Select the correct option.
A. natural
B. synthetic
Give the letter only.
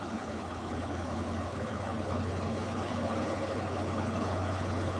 B